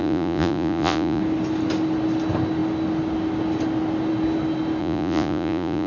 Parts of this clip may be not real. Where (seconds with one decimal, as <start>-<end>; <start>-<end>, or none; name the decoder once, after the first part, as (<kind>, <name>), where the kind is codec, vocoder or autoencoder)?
0.0-1.2 (vocoder, Vocos); 4.8-5.9